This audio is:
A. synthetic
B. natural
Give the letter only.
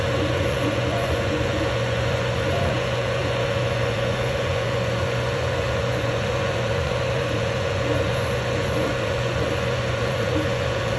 A